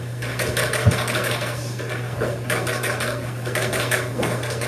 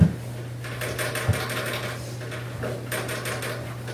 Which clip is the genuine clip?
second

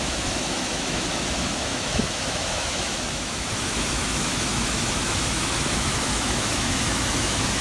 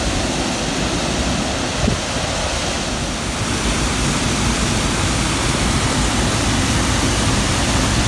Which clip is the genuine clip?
second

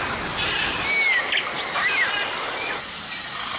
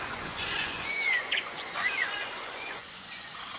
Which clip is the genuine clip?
first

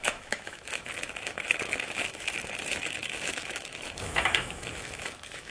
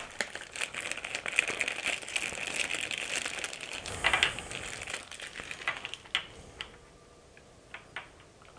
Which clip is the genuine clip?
second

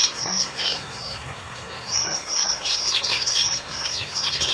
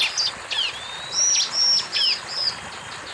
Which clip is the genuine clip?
second